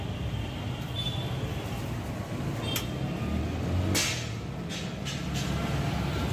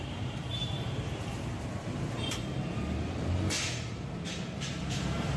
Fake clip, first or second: second